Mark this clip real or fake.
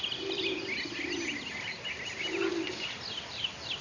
real